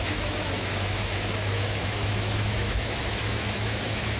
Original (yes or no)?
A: no